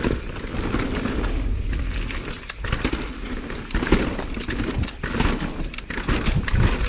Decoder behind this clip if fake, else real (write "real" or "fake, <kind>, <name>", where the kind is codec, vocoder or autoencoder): real